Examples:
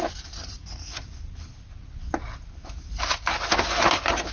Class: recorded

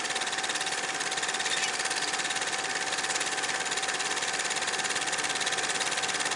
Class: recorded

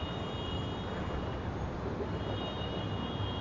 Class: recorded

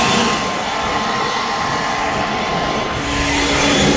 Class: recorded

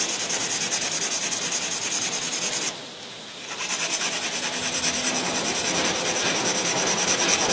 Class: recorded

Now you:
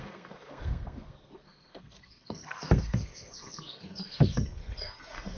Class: remade